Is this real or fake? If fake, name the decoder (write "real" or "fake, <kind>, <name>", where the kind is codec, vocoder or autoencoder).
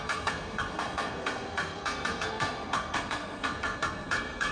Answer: fake, codec, SNAC